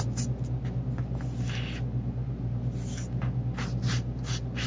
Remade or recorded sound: recorded